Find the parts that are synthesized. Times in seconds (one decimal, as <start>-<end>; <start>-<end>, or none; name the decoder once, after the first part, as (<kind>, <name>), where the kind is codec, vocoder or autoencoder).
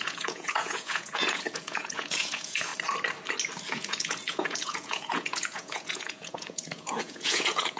0.0-2.7 (vocoder, Vocos); 3.7-7.8